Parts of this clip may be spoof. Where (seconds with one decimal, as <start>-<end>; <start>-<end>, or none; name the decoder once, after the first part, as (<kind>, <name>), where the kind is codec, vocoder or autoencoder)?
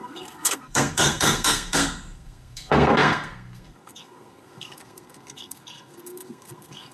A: 0.0-6.9 (codec, SNAC)